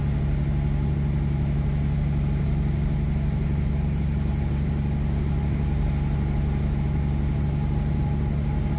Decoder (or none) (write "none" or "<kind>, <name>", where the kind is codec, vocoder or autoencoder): none